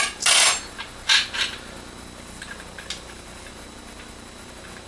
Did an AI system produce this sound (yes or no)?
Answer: no